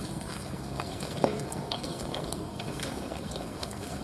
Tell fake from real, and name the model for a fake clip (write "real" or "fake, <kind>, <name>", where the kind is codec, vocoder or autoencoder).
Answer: fake, codec, SNAC